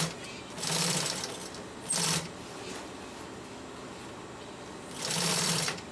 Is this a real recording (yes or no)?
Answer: yes